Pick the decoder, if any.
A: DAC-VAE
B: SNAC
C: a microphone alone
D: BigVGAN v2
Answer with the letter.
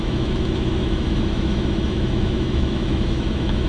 A